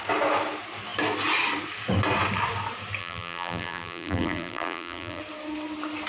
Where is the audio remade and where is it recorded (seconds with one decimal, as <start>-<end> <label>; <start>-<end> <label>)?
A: 0.0-3.0 recorded; 3.0-5.2 remade; 5.2-6.1 recorded